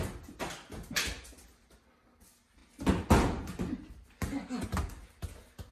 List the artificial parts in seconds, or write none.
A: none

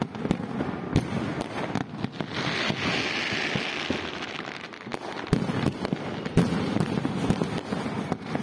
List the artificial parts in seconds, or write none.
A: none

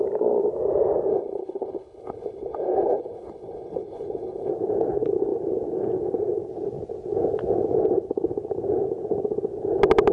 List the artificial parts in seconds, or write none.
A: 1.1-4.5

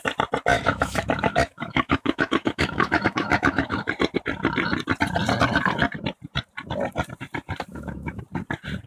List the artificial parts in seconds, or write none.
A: 0.5-3.9; 7.7-8.2

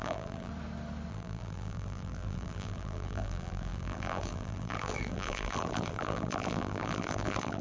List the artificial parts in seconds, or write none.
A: 0.0-0.5; 1.1-7.6